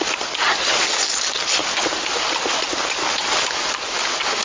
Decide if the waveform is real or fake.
real